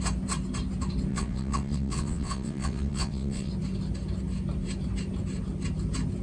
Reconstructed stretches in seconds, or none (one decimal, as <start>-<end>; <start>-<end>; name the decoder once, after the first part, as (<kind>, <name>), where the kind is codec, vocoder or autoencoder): 1.1-3.5 (vocoder, WaveNeXt)